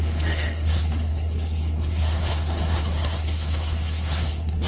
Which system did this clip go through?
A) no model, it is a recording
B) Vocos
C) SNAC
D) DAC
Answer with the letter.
C